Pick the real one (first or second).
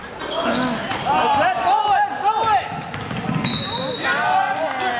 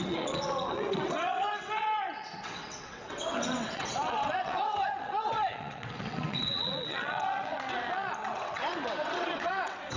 first